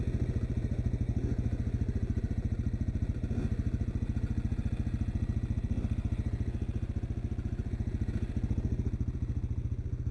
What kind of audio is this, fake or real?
real